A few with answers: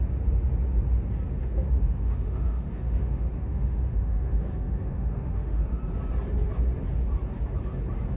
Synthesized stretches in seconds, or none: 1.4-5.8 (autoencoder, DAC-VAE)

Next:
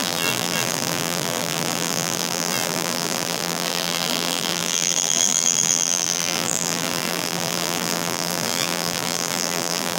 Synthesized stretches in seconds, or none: 0.0-10.0 (vocoder, BigVGAN v2)

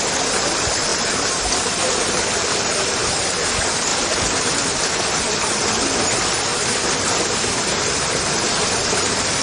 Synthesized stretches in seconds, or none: 0.0-0.9 (vocoder, BigVGAN v2); 1.7-6.5; 8.5-9.4

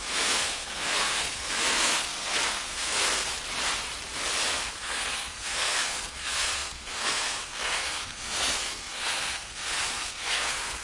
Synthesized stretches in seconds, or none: 0.0-3.3 (codec, SNAC); 4.5-10.8

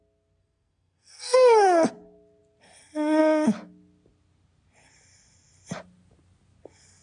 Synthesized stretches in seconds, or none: 0.4-1.9 (codec, SNAC)

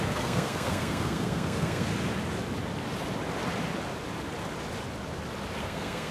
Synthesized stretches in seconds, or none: 0.0-1.9 (codec, SNAC); 5.6-6.1

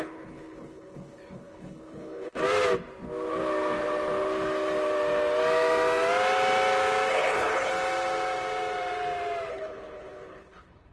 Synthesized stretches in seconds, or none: 0.0-2.4 (codec, HILCodec); 7.1-7.7; 9.5-10.9

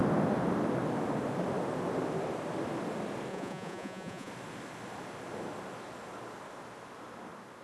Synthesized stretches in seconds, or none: 3.3-4.3 (vocoder, Vocos)